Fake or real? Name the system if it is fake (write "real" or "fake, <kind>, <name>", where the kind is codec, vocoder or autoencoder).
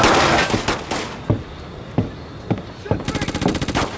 real